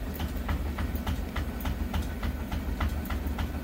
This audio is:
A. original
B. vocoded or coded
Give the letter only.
A